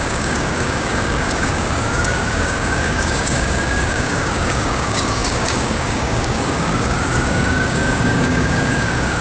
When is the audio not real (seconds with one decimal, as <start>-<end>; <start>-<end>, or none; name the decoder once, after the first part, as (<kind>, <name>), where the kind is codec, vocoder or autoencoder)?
0.0-9.2 (codec, DAC)